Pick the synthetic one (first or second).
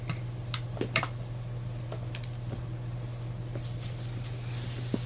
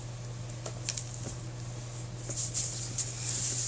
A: first